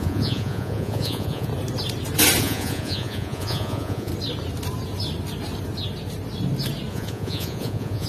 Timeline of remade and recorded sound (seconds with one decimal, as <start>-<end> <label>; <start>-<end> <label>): 0.0-1.5 remade; 1.5-2.4 recorded; 2.4-4.1 remade; 4.1-6.9 recorded; 6.9-8.1 remade